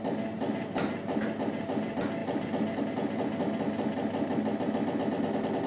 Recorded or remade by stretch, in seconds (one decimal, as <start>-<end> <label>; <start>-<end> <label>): 0.0-5.7 recorded